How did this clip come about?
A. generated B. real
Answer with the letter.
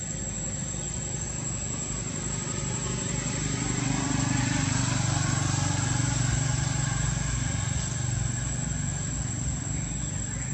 B